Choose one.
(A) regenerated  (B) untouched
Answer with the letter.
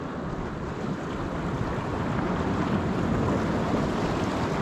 B